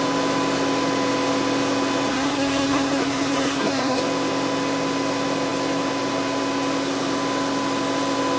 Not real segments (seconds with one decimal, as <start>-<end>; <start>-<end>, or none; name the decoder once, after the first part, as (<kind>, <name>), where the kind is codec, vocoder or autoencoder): 2.1-4.0 (codec, SNAC)